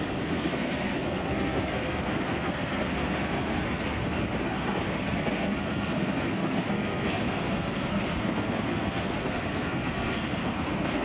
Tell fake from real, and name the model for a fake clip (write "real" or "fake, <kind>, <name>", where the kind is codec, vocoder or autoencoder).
fake, codec, SNAC